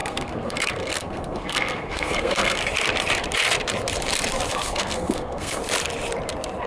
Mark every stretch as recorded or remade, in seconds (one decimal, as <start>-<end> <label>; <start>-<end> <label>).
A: 0.0-2.6 remade; 2.6-4.5 recorded; 4.5-5.6 remade; 5.6-6.7 recorded